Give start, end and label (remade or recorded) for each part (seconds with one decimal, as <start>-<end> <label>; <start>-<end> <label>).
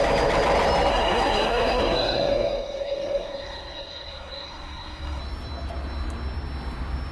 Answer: 0.0-0.9 recorded; 0.9-5.2 remade; 5.2-7.1 recorded